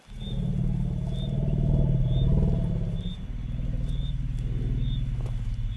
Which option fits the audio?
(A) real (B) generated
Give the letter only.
A